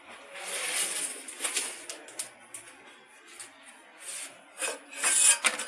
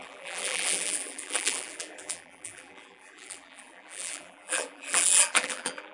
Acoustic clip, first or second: first